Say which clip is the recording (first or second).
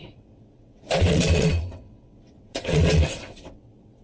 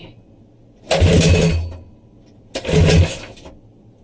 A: second